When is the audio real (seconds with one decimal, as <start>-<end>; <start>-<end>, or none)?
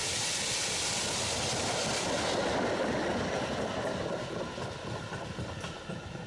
0.0-6.3